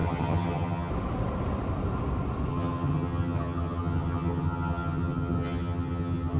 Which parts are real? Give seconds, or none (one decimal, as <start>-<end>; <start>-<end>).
0.9-2.5